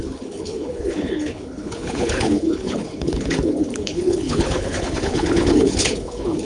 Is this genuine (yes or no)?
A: no